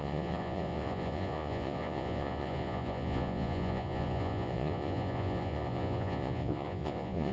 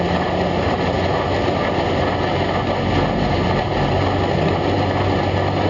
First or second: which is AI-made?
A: first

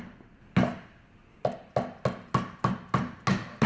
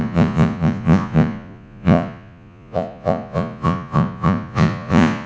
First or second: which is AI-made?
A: second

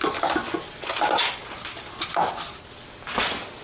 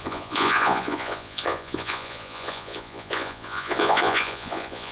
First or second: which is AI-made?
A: second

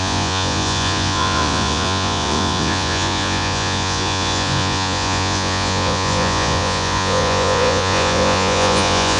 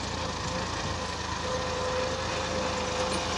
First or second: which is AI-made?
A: first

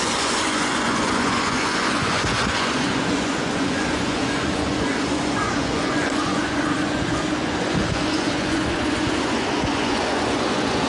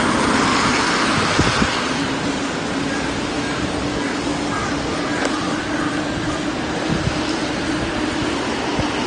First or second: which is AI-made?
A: first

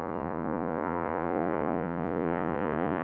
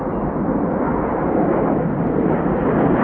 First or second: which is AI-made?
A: first